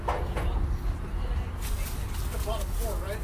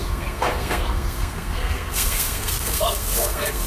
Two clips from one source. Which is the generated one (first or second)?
second